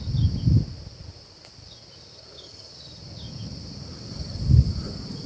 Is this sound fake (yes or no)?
no